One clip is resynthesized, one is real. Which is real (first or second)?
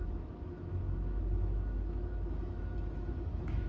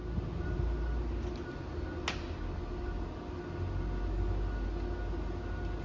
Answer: second